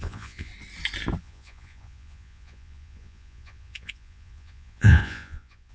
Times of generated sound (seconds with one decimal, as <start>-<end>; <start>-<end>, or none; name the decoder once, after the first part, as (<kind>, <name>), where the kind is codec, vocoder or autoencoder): 0.0-0.5 (vocoder, Vocos); 1.2-5.7